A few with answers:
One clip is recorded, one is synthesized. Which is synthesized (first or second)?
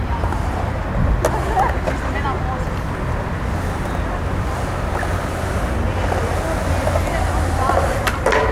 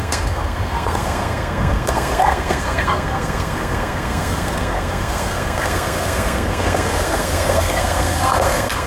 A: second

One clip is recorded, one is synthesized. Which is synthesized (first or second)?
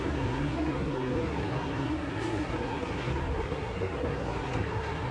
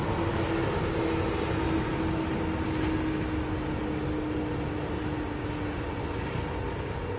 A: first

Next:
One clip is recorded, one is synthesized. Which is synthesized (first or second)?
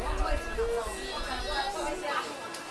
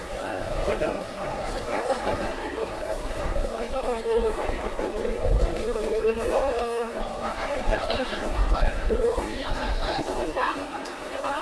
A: second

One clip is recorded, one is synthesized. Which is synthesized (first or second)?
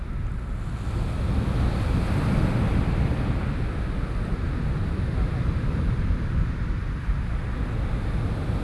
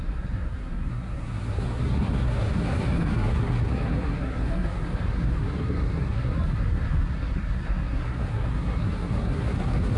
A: second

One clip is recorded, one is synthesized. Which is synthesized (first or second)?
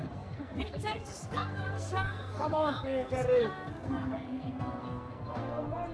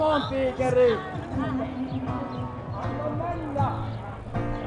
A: first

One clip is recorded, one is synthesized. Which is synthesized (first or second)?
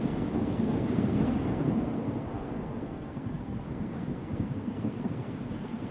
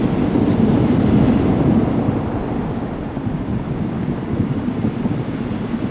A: first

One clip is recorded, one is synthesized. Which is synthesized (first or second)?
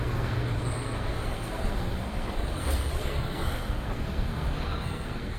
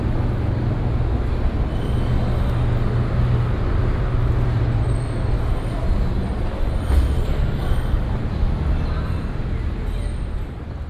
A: first